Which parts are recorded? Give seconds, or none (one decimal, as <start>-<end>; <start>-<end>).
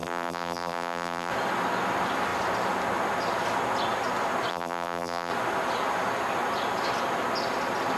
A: 1.3-4.5; 5.3-8.0